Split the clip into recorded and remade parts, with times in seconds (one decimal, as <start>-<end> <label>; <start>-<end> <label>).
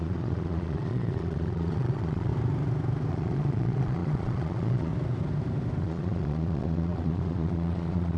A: 0.0-2.3 remade; 2.3-3.1 recorded; 3.1-4.9 remade; 4.9-5.8 recorded; 5.8-8.2 remade